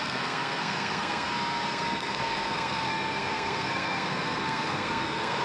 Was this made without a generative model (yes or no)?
no